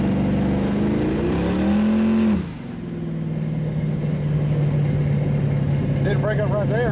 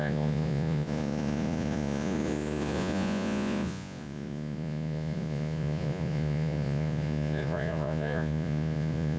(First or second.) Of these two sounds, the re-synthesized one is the second